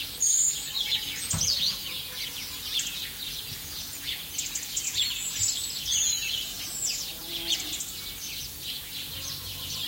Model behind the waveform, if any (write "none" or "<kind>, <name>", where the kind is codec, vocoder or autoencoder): vocoder, Vocos